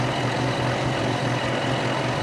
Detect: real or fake real